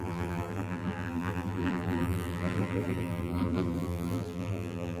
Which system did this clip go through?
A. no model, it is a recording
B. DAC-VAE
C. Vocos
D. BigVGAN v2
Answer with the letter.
D